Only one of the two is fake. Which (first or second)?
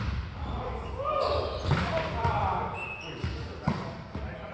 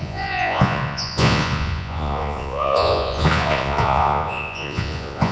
second